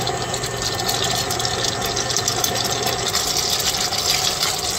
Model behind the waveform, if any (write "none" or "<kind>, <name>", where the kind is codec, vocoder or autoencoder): none